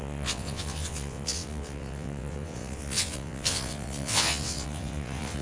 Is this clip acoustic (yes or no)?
no